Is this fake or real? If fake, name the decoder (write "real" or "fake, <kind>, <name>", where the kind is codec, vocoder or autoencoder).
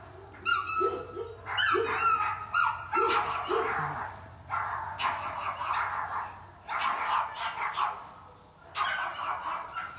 real